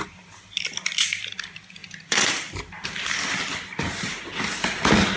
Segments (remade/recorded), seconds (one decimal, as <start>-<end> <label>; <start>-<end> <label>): 0.0-1.8 recorded; 1.8-4.5 remade; 4.5-5.2 recorded

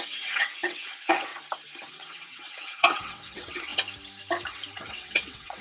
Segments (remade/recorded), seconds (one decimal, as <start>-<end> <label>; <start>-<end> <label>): 0.0-1.3 remade; 1.3-1.9 recorded; 1.9-3.7 remade; 3.7-4.7 recorded; 4.7-5.6 remade

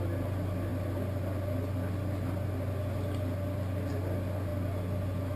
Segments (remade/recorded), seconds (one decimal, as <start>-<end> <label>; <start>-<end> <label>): 0.0-5.4 recorded

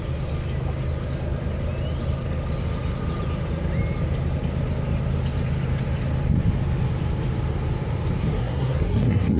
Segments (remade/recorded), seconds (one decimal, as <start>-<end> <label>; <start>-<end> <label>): 0.0-8.2 recorded; 8.2-9.4 remade